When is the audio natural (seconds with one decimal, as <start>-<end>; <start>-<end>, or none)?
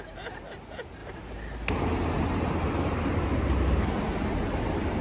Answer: 0.0-5.0